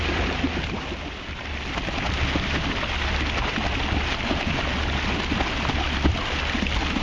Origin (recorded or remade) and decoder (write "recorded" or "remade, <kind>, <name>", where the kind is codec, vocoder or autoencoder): recorded